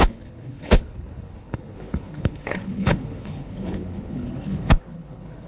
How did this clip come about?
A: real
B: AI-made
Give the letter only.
B